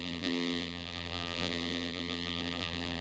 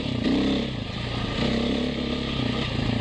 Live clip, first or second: second